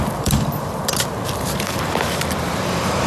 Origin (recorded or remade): remade